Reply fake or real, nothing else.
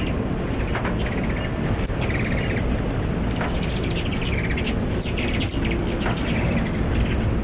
real